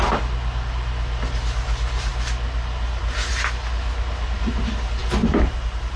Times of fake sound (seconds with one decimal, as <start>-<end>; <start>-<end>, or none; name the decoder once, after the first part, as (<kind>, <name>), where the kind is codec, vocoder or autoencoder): none